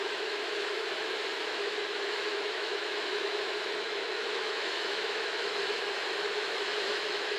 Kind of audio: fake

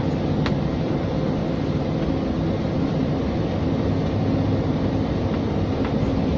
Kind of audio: real